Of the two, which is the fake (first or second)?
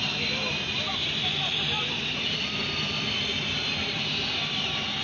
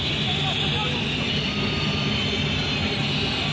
first